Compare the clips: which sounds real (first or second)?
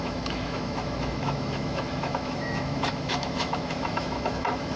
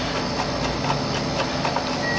second